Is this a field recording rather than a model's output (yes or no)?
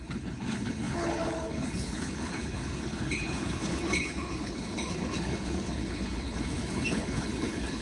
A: no